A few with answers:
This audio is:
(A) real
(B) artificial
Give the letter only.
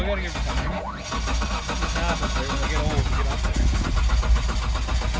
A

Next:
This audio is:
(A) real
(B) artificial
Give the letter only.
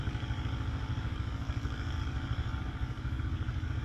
B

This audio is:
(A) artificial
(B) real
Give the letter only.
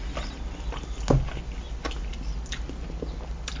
B